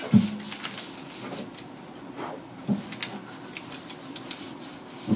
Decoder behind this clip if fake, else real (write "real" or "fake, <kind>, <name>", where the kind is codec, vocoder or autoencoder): real